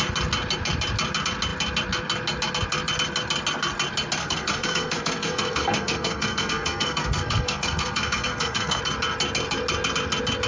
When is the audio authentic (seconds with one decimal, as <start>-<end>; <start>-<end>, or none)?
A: 0.0-4.2; 8.8-10.5